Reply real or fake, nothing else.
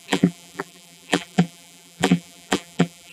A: fake